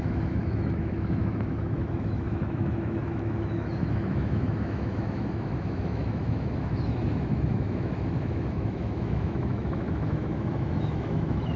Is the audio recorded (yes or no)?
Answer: no